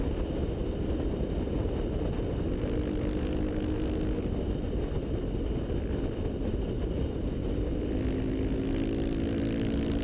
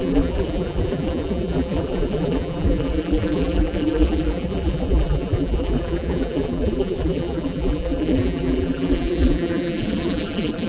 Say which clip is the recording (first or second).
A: first